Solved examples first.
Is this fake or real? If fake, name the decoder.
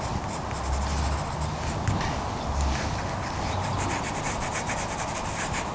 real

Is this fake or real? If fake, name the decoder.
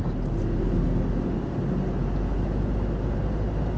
real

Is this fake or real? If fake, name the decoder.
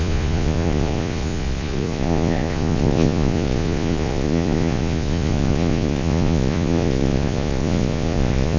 fake, vocoder, Vocos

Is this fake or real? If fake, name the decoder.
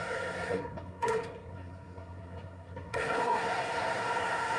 fake, codec, SNAC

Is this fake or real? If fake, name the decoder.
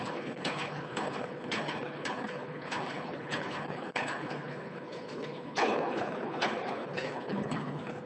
fake, codec, HILCodec